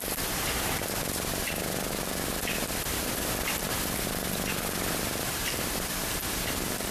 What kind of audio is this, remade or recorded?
recorded